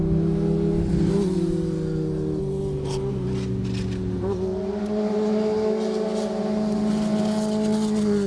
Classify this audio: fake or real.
real